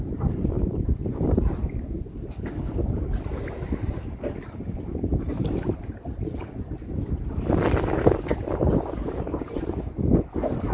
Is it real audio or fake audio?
real